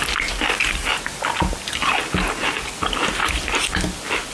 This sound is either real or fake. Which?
real